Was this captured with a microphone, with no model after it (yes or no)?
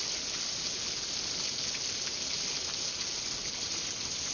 yes